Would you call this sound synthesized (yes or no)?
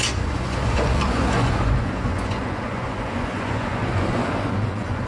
yes